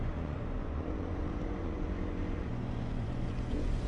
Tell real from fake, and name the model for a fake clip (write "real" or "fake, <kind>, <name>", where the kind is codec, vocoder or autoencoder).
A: fake, vocoder, Vocos